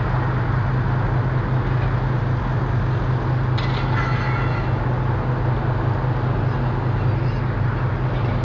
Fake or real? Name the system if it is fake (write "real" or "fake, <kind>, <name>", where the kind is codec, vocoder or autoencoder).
real